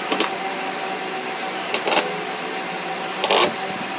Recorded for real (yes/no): yes